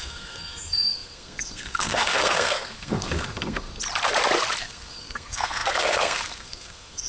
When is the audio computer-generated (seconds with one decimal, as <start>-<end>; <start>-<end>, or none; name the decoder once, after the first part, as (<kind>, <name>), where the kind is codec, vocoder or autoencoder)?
0.0-3.7 (codec, SNAC); 4.6-7.1